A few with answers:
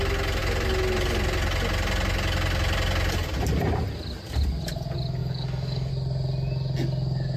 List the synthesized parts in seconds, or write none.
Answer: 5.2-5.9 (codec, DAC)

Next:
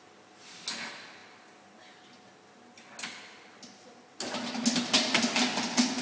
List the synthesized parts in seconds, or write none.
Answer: none

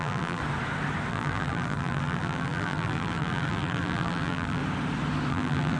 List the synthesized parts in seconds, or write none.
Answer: 0.0-0.4 (vocoder, BigVGAN v2); 1.1-4.6; 5.3-5.8

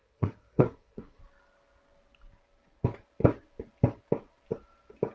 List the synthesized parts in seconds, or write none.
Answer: 0.0-1.2 (codec, SNAC)

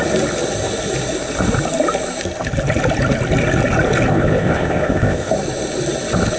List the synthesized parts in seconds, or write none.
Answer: 4.1-5.3 (codec, ZipCodec)